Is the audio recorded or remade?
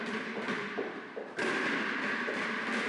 recorded